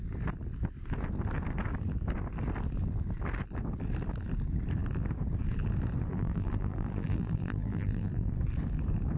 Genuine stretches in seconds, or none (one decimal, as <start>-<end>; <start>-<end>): 0.0-6.1; 8.3-9.2